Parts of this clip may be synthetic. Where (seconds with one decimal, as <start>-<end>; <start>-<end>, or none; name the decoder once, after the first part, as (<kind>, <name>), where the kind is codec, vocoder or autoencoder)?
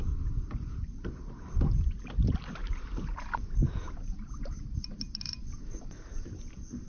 2.6-6.9 (vocoder, BigVGAN v2)